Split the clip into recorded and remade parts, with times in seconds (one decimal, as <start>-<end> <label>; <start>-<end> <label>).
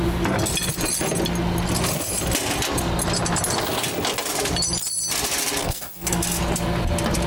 0.0-5.6 recorded; 5.6-6.4 remade; 6.4-7.3 recorded